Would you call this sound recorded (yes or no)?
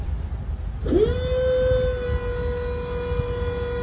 yes